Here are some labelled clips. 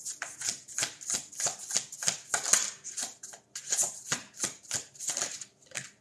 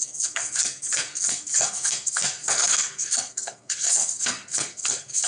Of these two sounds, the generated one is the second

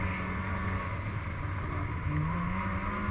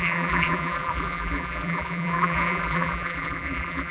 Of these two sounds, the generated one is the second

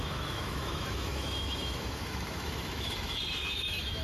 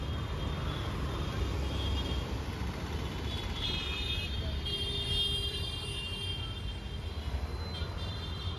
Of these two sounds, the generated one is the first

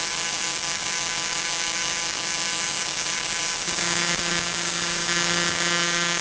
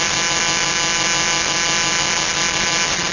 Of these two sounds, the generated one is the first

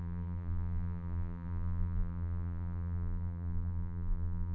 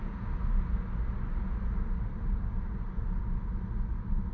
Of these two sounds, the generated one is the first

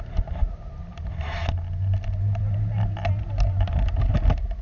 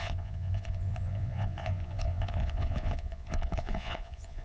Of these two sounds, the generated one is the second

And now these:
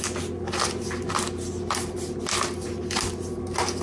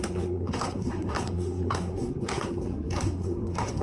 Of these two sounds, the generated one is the second